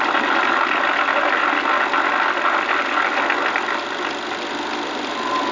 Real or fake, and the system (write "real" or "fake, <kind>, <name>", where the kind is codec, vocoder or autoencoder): real